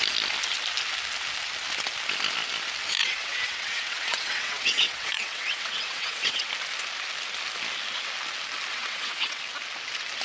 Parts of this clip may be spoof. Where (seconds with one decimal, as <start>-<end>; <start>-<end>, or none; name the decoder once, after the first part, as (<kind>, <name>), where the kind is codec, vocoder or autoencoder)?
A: 3.0-6.5 (vocoder, WaveNeXt); 8.7-9.4